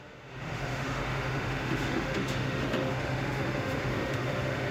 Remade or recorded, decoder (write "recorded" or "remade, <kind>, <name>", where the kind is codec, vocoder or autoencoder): remade, autoencoder, DAC-VAE